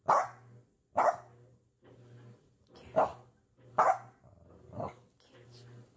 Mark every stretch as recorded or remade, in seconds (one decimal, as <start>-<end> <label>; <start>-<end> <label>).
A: 0.0-6.0 recorded